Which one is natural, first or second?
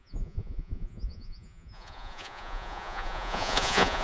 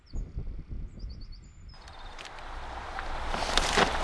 second